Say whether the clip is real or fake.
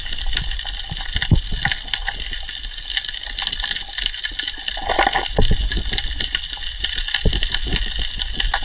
real